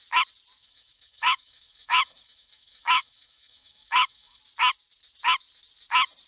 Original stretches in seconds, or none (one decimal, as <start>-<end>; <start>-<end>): 0.0-0.6; 4.4-6.3